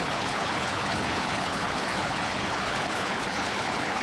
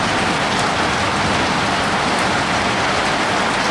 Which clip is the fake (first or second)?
first